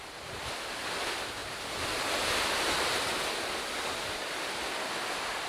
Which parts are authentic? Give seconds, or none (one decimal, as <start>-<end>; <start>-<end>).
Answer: 0.0-5.5